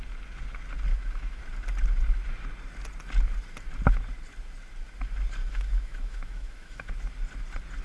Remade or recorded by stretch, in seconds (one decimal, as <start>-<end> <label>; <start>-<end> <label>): 0.0-0.9 recorded; 0.9-1.4 remade; 1.4-5.4 recorded; 5.4-6.9 remade; 6.9-7.8 recorded